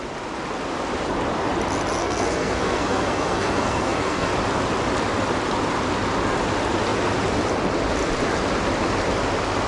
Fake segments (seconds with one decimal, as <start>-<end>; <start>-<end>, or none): 2.0-4.3